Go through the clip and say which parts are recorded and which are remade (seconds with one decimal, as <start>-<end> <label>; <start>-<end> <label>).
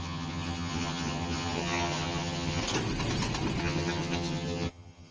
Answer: 0.0-2.6 remade; 2.6-3.6 recorded; 3.6-5.1 remade